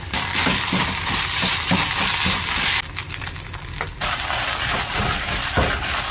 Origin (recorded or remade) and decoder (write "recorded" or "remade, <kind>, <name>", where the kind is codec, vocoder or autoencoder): recorded